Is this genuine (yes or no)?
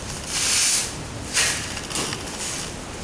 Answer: yes